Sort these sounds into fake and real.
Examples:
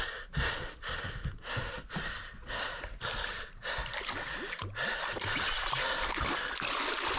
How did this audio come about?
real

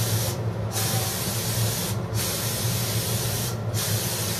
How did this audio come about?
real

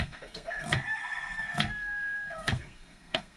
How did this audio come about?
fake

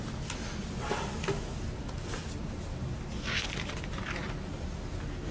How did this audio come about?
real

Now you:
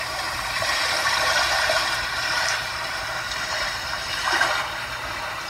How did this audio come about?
fake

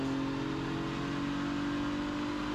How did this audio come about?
real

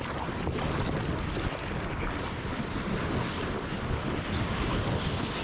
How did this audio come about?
real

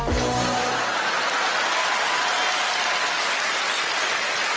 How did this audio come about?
real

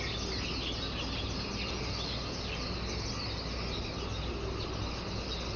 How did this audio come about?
real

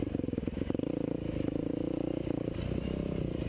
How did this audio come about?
real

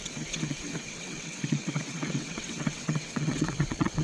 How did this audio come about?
fake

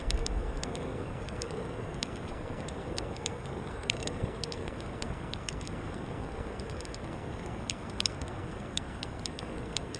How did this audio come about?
fake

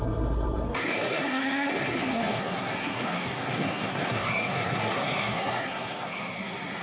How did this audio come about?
fake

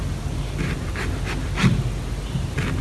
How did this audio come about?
real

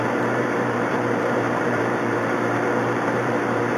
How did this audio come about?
fake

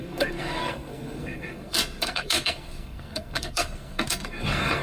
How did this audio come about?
fake